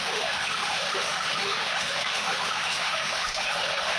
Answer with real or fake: fake